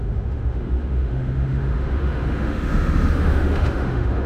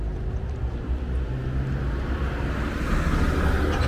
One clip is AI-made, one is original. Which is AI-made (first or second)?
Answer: first